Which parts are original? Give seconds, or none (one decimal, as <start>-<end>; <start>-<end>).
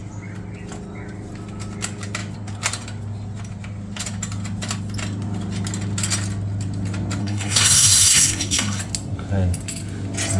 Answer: 0.0-7.2; 8.8-10.4